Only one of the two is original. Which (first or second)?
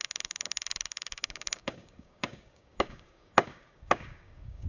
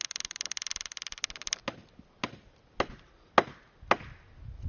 second